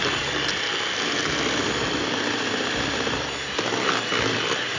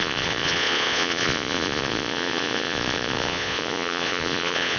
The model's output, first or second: second